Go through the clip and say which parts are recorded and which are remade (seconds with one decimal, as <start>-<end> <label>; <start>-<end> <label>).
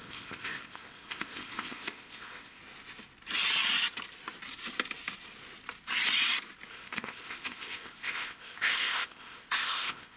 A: 0.0-2.6 remade; 2.6-6.7 recorded; 6.7-10.2 remade